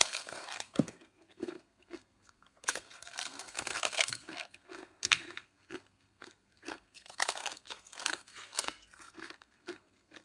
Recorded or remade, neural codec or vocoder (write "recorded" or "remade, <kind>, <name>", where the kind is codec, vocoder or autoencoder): remade, codec, SNAC